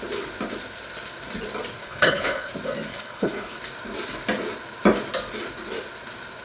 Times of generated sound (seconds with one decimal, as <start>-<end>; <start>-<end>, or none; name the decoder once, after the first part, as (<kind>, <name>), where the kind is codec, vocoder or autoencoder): 1.8-2.5 (codec, HILCodec); 2.9-3.6